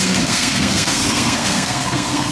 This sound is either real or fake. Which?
fake